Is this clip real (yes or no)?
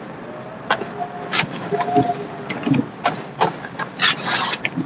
yes